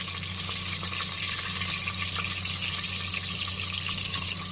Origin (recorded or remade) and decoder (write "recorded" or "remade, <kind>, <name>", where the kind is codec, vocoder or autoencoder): recorded